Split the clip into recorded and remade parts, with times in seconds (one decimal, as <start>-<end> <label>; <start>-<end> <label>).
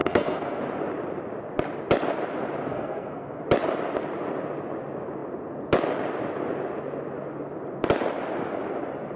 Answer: 0.0-0.6 remade; 0.6-2.7 recorded; 2.7-3.4 remade; 3.4-9.2 recorded